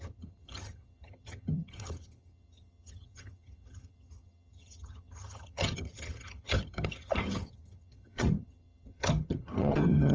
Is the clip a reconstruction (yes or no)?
yes